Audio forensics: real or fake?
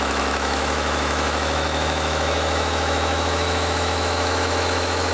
fake